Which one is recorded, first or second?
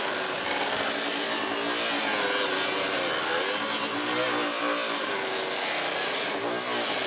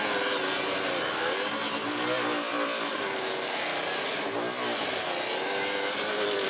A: first